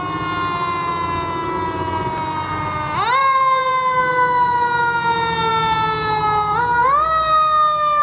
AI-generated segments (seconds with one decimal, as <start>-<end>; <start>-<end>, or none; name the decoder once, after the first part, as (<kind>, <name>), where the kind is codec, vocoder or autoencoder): 3.2-3.7 (vocoder, BigVGAN v2)